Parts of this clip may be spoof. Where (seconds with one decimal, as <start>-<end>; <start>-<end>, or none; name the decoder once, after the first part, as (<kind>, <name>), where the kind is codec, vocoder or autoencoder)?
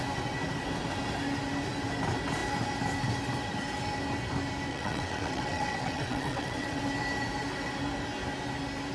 4.7-6.8 (vocoder, WaveNeXt)